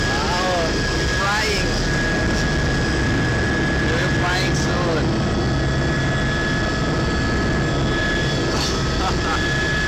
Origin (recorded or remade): recorded